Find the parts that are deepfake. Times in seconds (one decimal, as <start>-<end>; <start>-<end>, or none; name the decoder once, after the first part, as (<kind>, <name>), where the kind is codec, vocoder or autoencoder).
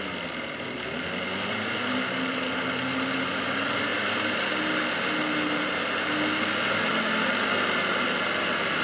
none